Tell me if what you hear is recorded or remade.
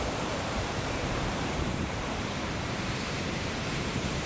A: remade